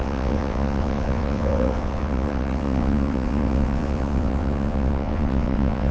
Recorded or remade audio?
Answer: remade